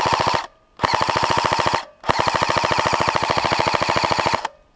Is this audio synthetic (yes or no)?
no